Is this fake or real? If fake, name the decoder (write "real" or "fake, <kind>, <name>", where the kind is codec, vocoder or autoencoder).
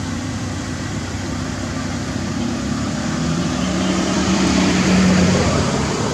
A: fake, vocoder, BigVGAN v2